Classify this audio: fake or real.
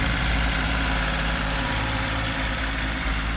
fake